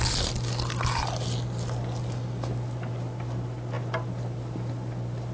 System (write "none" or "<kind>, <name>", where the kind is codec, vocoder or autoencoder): none